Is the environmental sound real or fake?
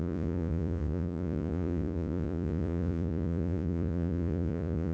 fake